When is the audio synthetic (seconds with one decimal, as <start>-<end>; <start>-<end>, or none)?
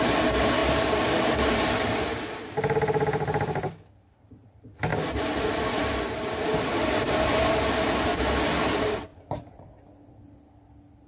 0.6-1.5; 4.9-7.5; 9.1-9.7